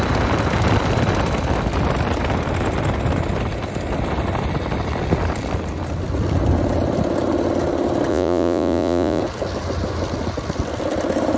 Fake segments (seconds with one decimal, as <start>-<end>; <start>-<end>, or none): 8.1-9.2